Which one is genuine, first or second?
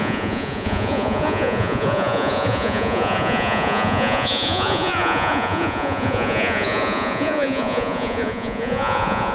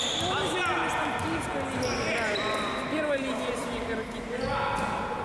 second